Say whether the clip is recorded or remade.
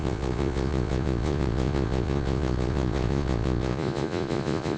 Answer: remade